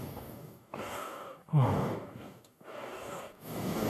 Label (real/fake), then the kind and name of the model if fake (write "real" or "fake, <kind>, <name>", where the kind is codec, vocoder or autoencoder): fake, codec, DAC